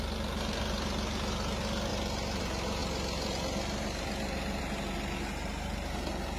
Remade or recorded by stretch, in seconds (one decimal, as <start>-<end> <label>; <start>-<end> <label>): 0.0-6.4 recorded